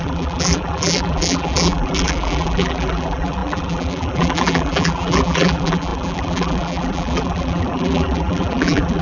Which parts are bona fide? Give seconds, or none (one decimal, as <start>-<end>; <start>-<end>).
none